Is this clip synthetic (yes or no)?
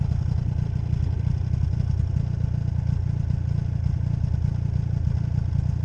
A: no